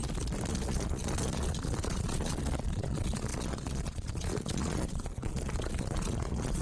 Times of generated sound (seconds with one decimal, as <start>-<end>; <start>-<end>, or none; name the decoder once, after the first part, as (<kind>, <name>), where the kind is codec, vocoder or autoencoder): 0.5-6.6 (vocoder, Vocos)